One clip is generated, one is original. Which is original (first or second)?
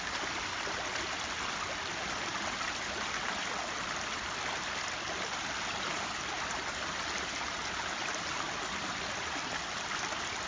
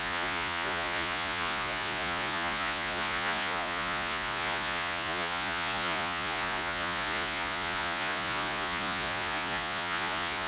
first